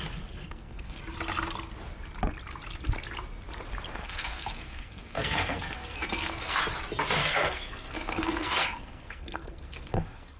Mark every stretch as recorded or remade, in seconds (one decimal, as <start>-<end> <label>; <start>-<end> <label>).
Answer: 0.0-0.4 recorded; 0.4-1.0 remade; 1.0-3.9 recorded; 3.9-6.6 remade; 6.6-7.2 recorded; 7.2-10.4 remade